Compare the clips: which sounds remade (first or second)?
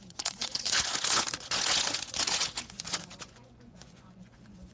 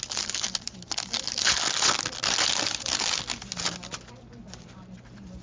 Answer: first